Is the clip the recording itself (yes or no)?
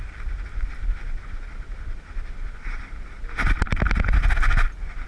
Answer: yes